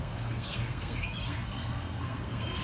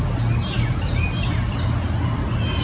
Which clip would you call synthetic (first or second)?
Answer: first